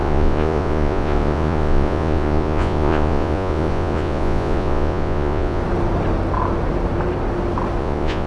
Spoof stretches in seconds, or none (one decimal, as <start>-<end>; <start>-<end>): 0.0-5.6; 7.8-8.3